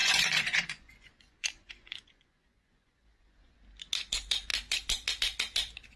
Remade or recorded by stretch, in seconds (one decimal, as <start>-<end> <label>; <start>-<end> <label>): 0.0-3.6 remade; 3.6-6.0 recorded